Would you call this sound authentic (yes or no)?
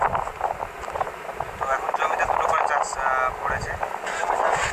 yes